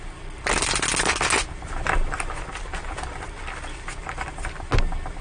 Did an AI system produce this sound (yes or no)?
no